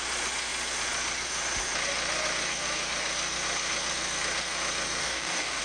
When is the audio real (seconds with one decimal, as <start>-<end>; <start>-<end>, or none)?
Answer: 0.0-5.0